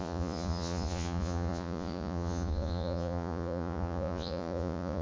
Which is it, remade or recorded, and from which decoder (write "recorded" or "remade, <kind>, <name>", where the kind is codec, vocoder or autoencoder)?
remade, vocoder, Vocos